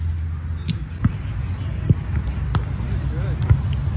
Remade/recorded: recorded